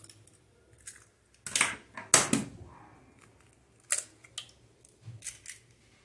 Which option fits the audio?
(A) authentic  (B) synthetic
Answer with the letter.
A